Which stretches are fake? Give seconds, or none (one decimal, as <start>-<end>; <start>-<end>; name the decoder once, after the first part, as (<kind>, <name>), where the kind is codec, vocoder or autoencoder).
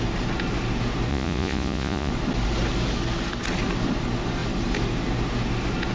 1.1-2.1 (vocoder, Vocos)